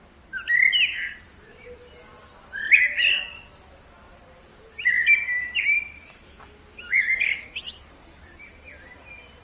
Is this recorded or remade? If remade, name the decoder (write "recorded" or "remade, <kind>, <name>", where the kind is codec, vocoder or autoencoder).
remade, vocoder, BigVGAN v2